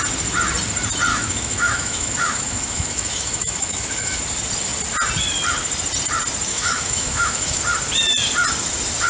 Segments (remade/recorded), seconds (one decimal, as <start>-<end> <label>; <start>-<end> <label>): 0.0-1.1 recorded; 1.1-4.2 remade; 4.2-6.5 recorded; 6.5-7.6 remade; 7.6-9.1 recorded